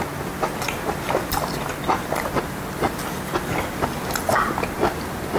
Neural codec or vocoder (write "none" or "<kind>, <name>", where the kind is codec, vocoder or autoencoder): none